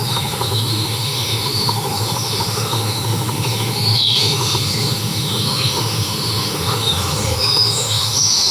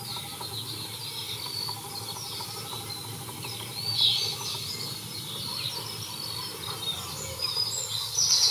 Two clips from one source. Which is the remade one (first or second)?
first